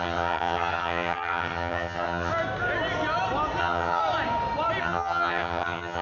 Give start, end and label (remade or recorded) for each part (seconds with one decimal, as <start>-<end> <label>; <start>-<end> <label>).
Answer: 0.0-2.3 remade; 2.3-3.6 recorded; 3.6-4.0 remade; 4.0-4.8 recorded; 4.8-6.0 remade